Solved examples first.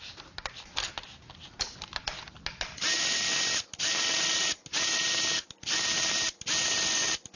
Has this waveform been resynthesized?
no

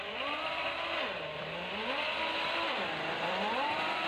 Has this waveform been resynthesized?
yes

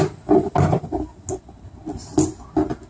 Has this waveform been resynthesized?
no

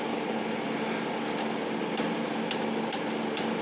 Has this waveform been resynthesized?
no